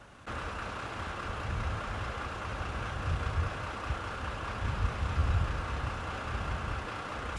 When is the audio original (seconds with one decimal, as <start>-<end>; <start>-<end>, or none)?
0.0-7.4